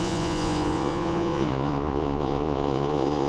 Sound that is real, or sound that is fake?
fake